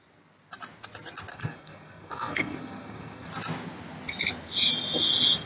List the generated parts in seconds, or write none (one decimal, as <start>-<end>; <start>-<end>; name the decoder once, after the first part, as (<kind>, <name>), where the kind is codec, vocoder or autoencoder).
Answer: 1.3-3.3 (codec, SNAC)

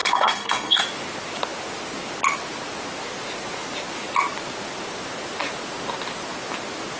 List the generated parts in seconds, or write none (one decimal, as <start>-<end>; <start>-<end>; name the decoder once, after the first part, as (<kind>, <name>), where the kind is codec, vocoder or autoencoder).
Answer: 0.0-0.8 (codec, SNAC)

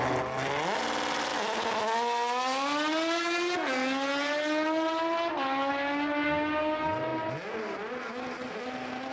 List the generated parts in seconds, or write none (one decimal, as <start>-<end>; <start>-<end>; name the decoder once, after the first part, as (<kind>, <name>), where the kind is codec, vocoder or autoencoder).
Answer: none

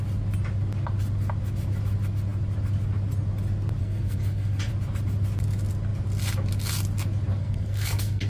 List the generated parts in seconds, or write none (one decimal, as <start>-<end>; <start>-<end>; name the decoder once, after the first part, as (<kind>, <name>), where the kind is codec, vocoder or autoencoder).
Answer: 3.8-4.7 (codec, SNAC); 7.4-8.3